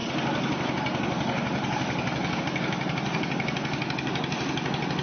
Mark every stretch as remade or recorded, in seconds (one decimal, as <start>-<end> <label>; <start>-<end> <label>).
0.0-5.0 recorded